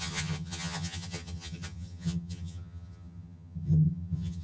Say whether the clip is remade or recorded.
remade